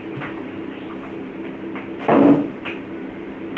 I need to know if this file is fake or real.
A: fake